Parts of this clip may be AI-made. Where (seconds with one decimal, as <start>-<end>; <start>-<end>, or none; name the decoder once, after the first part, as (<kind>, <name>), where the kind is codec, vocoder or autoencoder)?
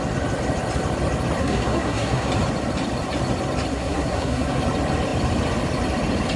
1.4-2.3 (codec, SNAC); 3.7-4.6